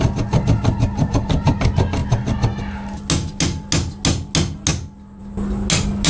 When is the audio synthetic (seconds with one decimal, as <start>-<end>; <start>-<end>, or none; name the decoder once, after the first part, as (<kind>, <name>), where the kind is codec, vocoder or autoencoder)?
none